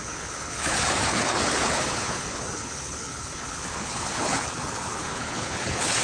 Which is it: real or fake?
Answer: fake